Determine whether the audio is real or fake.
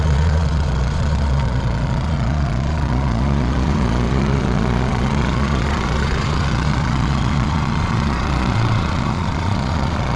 fake